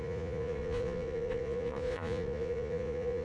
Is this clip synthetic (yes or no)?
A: yes